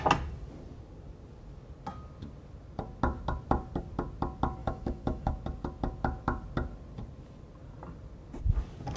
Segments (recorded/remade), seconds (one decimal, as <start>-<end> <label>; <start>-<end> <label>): 0.0-4.6 recorded; 4.6-5.3 remade; 5.3-9.0 recorded